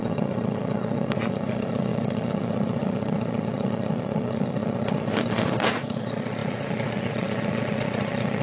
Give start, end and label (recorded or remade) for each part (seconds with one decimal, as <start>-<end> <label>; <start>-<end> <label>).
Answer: 0.0-8.4 remade